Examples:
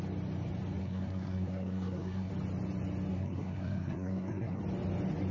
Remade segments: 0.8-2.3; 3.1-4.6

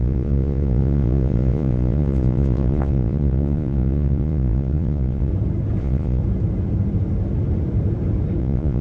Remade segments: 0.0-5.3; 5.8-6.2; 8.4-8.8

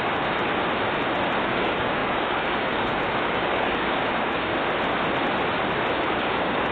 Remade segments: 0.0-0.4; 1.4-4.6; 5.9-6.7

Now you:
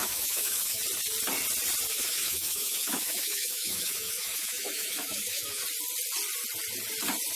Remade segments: 0.0-0.8; 1.9-5.6

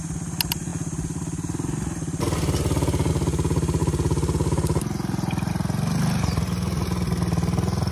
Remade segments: none

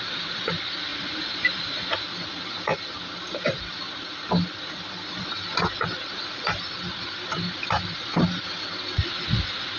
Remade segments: 0.9-2.0

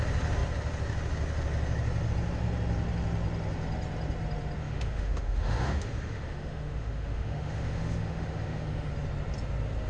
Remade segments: 4.6-8.9